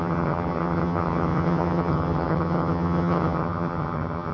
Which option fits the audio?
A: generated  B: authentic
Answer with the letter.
A